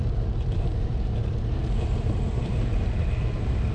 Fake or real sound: fake